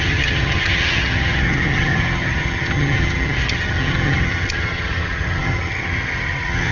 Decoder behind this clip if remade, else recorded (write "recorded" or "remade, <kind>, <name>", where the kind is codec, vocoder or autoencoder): remade, vocoder, HiFi-GAN